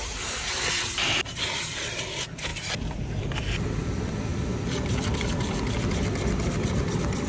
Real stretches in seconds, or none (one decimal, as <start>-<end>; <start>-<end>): none

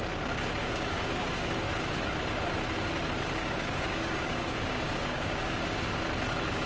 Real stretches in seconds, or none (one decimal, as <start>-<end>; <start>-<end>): 0.0-0.6; 1.5-3.4; 6.0-6.7

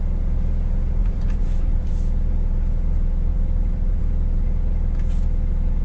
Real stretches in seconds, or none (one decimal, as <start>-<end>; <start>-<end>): 0.0-1.0; 1.9-3.3; 4.0-5.8

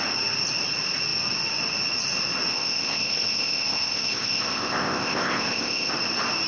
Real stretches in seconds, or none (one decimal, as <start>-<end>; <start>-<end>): 0.0-2.5; 5.9-6.5

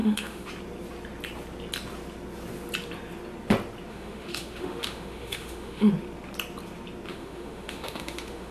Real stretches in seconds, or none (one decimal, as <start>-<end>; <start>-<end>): 0.5-3.9; 5.9-7.1

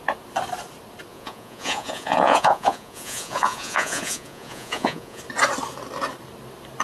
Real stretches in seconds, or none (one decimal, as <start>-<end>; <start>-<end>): 0.0-1.1; 5.2-6.8